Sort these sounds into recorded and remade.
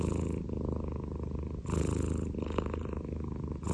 recorded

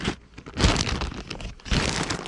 recorded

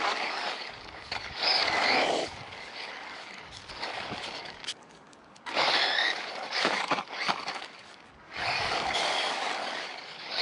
remade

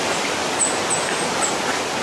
recorded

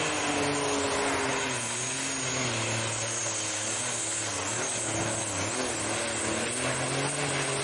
recorded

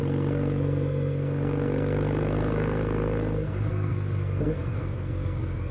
remade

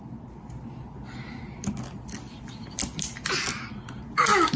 recorded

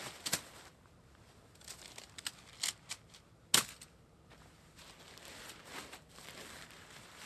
recorded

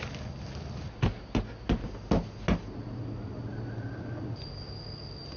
recorded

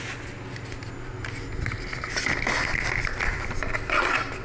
recorded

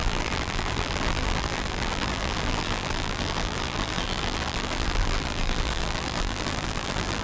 remade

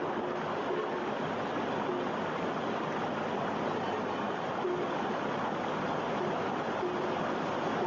recorded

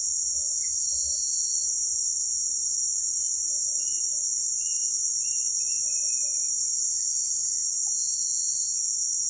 recorded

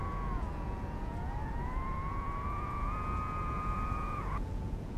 remade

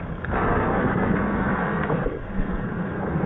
remade